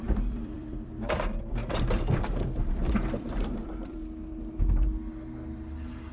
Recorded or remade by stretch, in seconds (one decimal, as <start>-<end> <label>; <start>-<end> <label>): 0.0-1.6 remade; 1.6-2.2 recorded; 2.2-4.0 remade; 4.0-6.1 recorded

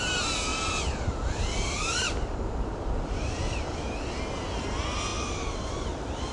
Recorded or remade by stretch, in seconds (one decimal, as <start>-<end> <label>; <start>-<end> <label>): 0.0-0.5 recorded; 0.5-4.2 remade; 4.2-5.1 recorded; 5.1-6.3 remade